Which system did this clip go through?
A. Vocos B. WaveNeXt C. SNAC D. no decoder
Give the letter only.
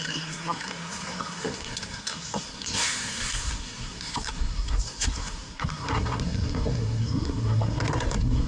C